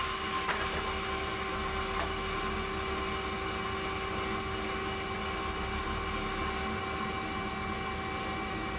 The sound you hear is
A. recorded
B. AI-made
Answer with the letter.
A